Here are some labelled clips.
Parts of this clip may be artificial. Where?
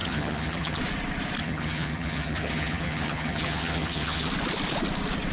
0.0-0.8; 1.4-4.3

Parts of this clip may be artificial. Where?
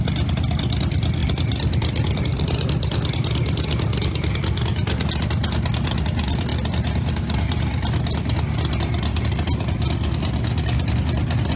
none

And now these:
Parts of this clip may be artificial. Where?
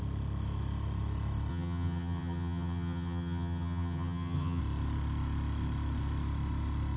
1.5-4.6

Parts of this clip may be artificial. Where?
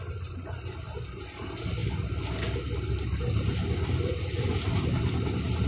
none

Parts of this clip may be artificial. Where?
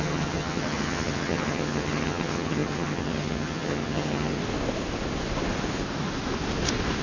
0.0-4.4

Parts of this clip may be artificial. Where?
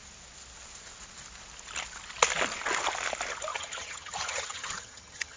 3.5-5.4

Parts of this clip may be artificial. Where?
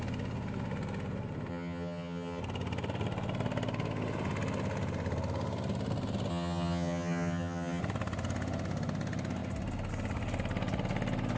1.5-2.4; 6.3-7.8